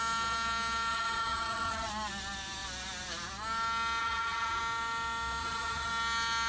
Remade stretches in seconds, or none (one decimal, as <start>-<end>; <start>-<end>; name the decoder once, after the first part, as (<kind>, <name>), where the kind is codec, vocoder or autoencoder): 0.9-1.9 (vocoder, Vocos); 4.0-4.6; 5.4-5.9